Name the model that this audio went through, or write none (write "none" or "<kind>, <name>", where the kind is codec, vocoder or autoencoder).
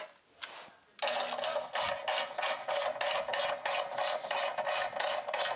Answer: none